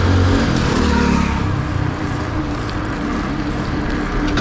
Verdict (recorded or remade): recorded